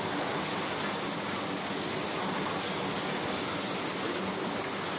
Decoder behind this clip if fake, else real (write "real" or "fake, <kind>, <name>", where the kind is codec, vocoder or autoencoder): real